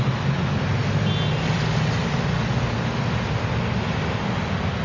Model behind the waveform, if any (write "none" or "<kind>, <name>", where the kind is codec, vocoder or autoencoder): none